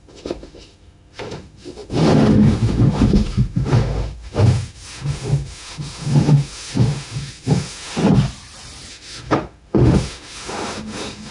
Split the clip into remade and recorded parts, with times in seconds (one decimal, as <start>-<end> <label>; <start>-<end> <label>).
0.0-8.0 remade; 8.0-8.9 recorded; 8.9-11.3 remade

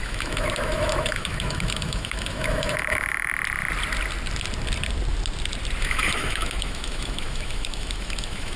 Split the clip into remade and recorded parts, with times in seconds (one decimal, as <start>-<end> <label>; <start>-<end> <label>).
0.0-3.3 remade; 3.3-5.8 recorded; 5.8-8.6 remade

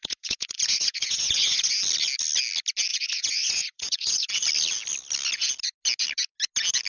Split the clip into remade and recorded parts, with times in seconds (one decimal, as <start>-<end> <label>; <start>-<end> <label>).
0.0-1.7 remade; 1.7-2.9 recorded; 2.9-4.3 remade; 4.3-6.9 recorded